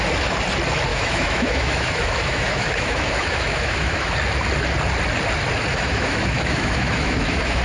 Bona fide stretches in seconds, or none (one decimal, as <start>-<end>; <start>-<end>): 0.0-0.9; 4.1-5.7